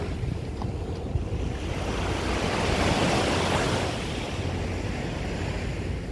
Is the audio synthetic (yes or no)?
no